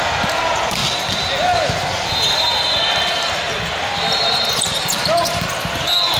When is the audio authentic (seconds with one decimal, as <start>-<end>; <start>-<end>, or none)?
0.0-6.2